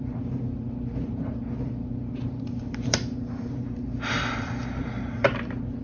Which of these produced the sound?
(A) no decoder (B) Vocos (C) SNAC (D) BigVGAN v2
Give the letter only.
D